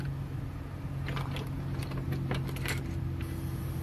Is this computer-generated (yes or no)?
no